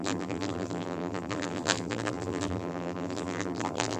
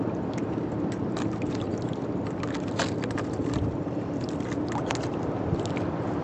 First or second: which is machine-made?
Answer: first